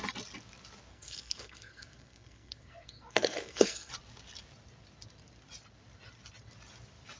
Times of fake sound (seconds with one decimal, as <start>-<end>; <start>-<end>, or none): 0.9-3.9